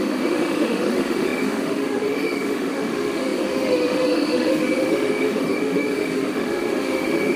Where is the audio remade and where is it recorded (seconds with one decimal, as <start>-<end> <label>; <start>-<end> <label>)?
0.0-7.4 remade